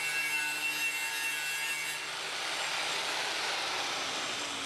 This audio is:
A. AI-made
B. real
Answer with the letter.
B